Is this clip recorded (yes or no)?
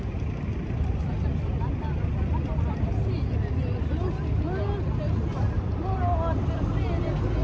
yes